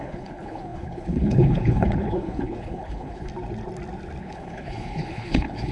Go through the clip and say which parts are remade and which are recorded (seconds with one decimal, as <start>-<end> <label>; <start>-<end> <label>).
0.0-3.3 remade; 3.3-4.2 recorded; 4.2-5.7 remade